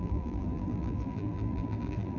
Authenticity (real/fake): fake